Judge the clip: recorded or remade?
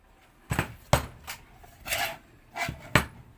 recorded